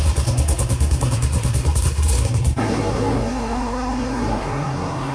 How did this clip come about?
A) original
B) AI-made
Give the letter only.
B